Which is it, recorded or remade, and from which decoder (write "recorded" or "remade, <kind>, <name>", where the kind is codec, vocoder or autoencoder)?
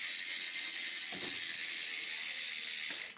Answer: recorded